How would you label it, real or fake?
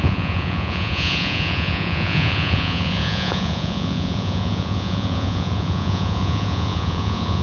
fake